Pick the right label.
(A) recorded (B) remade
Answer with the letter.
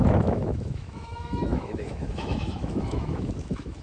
B